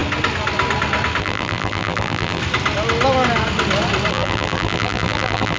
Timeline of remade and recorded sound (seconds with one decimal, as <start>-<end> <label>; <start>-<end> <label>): 0.0-1.2 recorded; 1.2-2.4 remade; 2.4-4.1 recorded; 4.1-5.6 remade